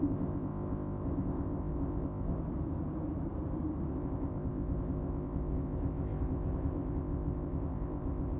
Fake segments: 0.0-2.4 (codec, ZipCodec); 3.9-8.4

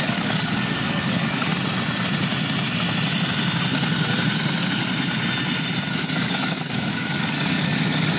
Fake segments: 0.0-1.5 (codec, DAC); 5.9-8.2

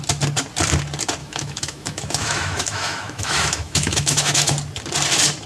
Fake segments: 1.2-4.5 (autoencoder, DAC-VAE)

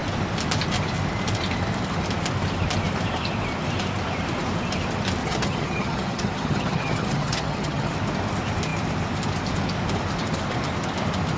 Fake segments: 5.2-7.9 (vocoder, HiFi-GAN)

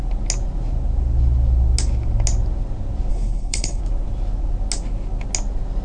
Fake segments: 3.1-3.8 (codec, HILCodec)